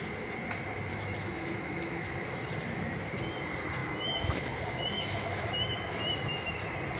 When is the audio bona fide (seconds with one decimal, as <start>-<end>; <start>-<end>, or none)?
0.0-0.9; 2.5-3.8; 6.5-7.0